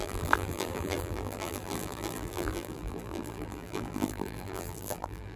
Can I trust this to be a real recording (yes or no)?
no